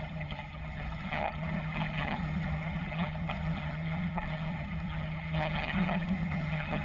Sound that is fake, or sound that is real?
fake